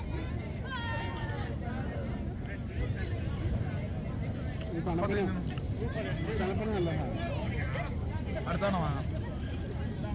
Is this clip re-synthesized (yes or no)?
no